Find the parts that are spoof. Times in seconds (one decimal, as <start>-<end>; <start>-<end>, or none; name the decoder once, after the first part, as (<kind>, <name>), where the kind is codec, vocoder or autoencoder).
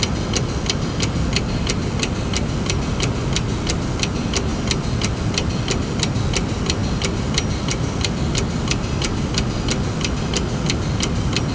6.8-10.3 (vocoder, BigVGAN v2)